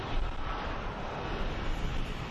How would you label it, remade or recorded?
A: recorded